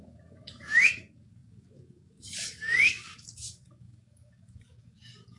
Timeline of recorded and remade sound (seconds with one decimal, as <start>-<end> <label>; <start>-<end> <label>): 0.0-5.4 remade